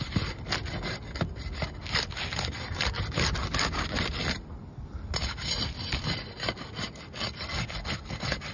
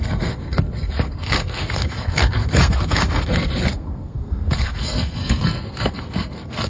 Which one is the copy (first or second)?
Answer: second